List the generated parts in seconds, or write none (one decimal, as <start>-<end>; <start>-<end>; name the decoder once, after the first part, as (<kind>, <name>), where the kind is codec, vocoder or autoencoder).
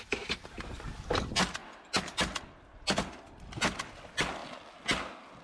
none